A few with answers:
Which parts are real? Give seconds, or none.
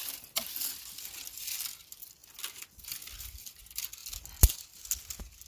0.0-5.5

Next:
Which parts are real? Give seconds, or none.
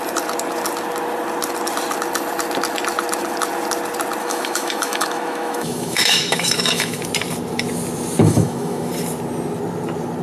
0.0-4.2; 7.0-8.2; 8.9-10.2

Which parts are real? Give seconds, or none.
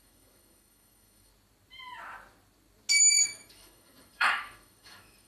1.3-3.1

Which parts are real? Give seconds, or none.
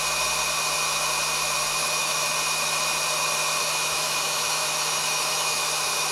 0.0-1.8; 2.3-3.6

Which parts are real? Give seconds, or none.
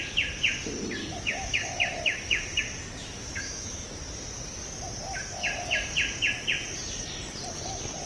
0.0-1.0; 2.6-3.0; 4.0-8.1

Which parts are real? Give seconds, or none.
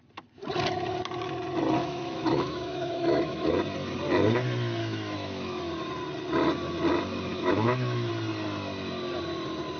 0.0-1.8; 3.5-4.8; 5.6-7.3; 8.1-9.8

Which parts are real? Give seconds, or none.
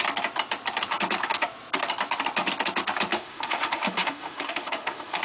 0.0-3.1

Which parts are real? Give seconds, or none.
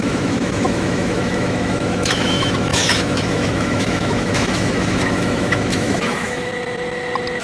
6.5-7.4